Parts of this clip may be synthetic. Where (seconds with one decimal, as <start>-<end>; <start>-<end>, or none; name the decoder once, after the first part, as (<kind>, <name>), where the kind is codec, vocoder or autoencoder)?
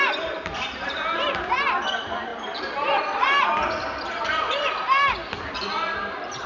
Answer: 2.3-6.5 (vocoder, BigVGAN v2)